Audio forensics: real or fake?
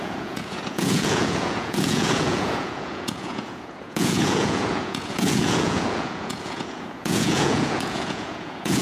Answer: fake